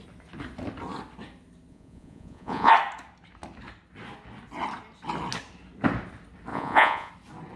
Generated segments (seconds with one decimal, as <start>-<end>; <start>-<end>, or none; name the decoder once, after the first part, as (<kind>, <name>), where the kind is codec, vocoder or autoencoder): 1.7-2.7 (vocoder, Vocos); 6.5-7.1